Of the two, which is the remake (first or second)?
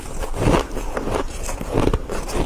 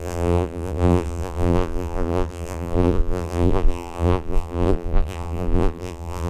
second